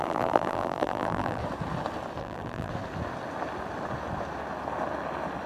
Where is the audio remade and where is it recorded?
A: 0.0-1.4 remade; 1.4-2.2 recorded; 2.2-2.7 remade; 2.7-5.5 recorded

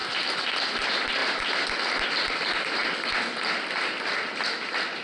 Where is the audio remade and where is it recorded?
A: 0.0-1.2 remade; 1.2-2.3 recorded; 2.3-2.8 remade; 2.8-5.0 recorded

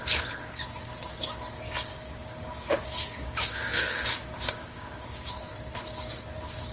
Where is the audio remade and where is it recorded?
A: 0.0-1.9 recorded; 1.9-5.3 remade; 5.3-6.7 recorded

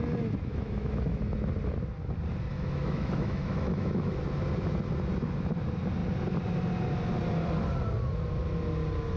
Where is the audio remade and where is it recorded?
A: 0.0-0.5 recorded; 0.5-1.2 remade; 1.2-2.5 recorded; 2.5-4.2 remade; 4.2-9.2 recorded

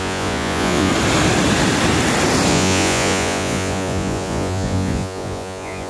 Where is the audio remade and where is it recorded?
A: 0.0-0.9 remade; 0.9-2.5 recorded; 2.5-5.9 remade